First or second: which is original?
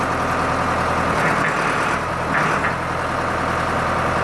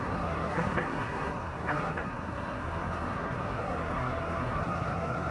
first